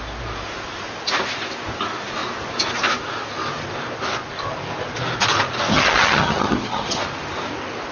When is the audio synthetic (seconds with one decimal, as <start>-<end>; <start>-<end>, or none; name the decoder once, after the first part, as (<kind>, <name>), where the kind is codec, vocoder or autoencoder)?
5.7-7.0 (vocoder, HiFi-GAN)

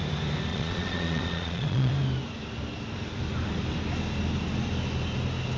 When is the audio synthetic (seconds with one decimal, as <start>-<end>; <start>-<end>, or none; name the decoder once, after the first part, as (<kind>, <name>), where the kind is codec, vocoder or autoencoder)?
0.5-1.9 (vocoder, Vocos)

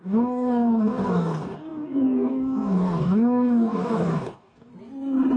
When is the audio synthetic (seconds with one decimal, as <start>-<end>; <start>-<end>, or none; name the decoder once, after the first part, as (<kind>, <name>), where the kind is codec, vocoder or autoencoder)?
0.0-4.7 (codec, DAC)

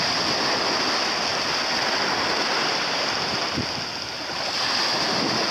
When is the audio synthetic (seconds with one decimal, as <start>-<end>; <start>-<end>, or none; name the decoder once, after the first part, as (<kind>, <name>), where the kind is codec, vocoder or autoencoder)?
none

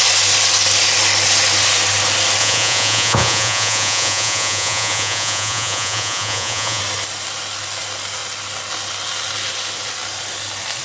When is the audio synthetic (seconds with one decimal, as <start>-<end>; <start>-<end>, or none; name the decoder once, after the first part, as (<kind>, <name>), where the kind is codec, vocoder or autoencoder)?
2.4-6.8 (vocoder, Vocos)

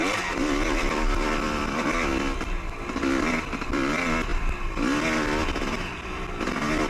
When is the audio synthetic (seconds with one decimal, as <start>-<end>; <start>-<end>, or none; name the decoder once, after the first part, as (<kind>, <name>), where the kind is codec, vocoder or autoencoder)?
none